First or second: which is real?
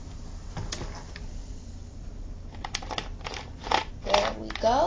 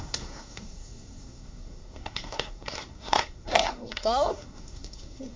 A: first